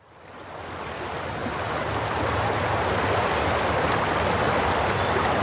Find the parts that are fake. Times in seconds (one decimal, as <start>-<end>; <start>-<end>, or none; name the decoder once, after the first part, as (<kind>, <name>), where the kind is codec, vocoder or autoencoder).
none